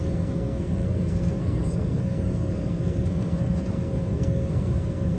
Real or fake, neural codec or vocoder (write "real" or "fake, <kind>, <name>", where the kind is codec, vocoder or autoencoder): fake, codec, SNAC